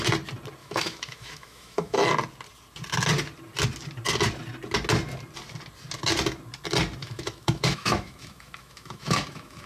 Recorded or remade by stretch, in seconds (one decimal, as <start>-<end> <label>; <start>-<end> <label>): 0.0-0.6 recorded; 0.6-2.1 remade; 2.1-7.0 recorded; 7.0-9.7 remade